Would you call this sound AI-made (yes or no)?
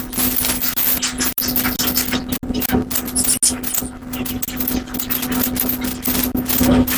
no